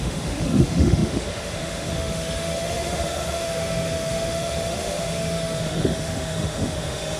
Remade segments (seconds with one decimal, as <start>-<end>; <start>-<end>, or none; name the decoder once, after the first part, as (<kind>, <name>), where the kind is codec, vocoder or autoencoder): 0.0-7.2 (autoencoder, DAC-VAE)